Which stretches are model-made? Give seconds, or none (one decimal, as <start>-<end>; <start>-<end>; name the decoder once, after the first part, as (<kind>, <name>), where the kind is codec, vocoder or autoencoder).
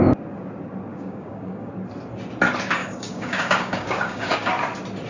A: 0.9-1.7 (codec, DAC); 2.8-4.5